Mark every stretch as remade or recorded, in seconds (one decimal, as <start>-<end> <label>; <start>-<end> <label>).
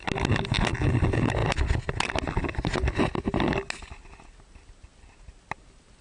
0.0-6.0 recorded